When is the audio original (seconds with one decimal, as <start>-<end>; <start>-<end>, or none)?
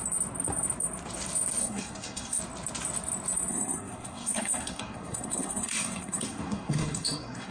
0.0-1.6; 2.4-3.5